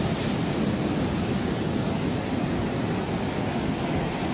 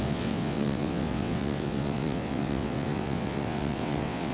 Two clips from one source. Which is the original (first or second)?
first